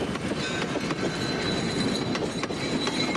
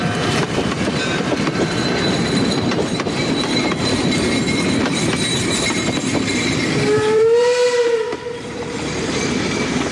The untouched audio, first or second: first